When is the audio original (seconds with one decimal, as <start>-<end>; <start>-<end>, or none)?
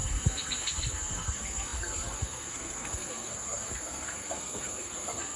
none